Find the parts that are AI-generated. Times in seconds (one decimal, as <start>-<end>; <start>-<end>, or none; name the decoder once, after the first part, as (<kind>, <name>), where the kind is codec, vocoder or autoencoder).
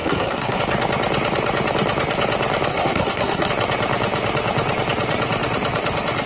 0.0-0.6 (codec, SNAC); 2.7-3.5